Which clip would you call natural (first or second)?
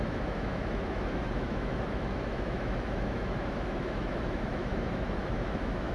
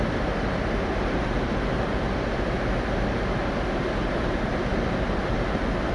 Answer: second